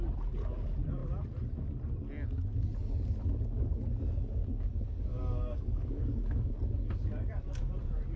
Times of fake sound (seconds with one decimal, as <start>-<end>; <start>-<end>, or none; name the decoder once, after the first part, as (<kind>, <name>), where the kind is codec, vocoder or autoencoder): 5.1-6.5 (codec, DAC)